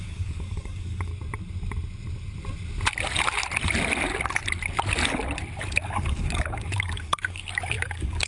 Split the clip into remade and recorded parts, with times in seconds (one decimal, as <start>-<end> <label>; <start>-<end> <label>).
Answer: 0.0-1.1 remade; 1.1-5.6 recorded; 5.6-8.3 remade